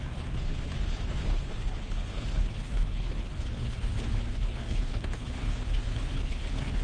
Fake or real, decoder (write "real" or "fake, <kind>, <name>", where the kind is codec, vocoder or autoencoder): fake, codec, HILCodec